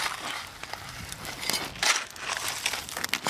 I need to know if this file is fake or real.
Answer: real